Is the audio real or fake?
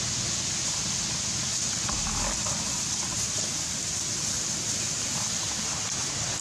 real